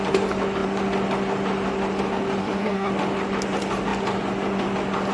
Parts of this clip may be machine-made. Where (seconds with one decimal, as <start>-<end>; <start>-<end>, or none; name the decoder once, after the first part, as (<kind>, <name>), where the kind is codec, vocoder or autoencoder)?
2.4-2.9 (codec, SNAC)